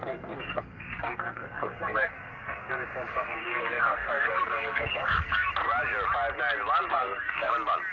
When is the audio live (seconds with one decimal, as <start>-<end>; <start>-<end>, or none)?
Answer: 2.7-3.1; 5.5-6.9; 7.5-7.9